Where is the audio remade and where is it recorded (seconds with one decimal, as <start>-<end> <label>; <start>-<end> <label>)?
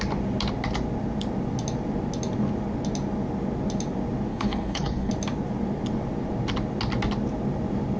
0.0-4.3 recorded; 4.3-5.1 remade; 5.1-8.0 recorded